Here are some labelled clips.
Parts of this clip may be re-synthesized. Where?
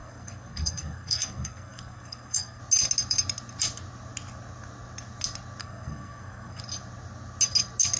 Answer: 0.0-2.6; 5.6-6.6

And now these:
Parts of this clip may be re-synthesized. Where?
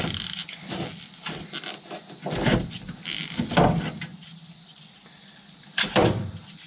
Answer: 4.1-6.7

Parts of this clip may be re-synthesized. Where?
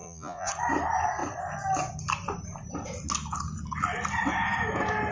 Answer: 0.0-0.5